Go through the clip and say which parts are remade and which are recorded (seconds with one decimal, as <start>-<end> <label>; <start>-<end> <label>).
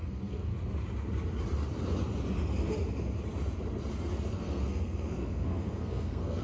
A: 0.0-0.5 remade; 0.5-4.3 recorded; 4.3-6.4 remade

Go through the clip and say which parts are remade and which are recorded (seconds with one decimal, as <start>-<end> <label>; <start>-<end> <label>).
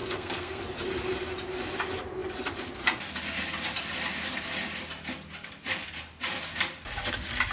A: 0.0-0.6 remade; 0.6-7.5 recorded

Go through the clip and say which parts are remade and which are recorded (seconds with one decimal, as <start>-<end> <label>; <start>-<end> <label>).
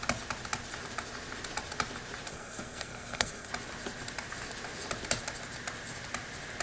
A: 0.0-2.3 recorded; 2.3-3.5 remade; 3.5-6.6 recorded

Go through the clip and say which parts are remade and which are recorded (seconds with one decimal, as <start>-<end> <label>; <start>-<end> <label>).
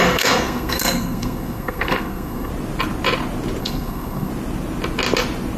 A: 0.0-2.5 remade; 2.5-3.6 recorded; 3.6-4.3 remade; 4.3-5.6 recorded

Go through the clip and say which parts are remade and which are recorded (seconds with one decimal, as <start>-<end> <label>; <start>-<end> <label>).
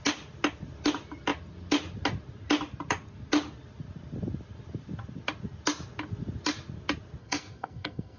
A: 0.0-7.2 recorded; 7.2-8.2 remade